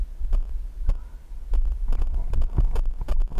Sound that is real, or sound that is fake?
real